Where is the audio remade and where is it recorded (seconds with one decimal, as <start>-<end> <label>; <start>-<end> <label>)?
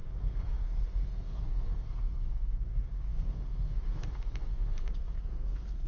0.0-5.9 remade